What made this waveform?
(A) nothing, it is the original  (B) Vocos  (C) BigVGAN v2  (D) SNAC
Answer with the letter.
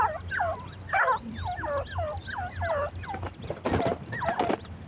A